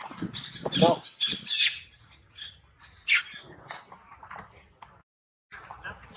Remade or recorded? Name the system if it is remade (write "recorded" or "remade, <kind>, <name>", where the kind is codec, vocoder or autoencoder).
recorded